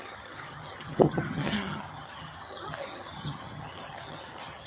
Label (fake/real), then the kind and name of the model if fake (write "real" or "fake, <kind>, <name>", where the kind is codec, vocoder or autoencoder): fake, vocoder, HiFi-GAN